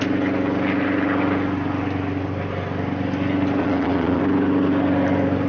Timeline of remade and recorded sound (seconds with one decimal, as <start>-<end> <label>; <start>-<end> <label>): 0.0-3.6 recorded; 3.6-4.2 remade; 4.2-5.5 recorded